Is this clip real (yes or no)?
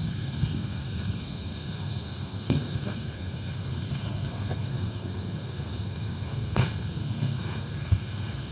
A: no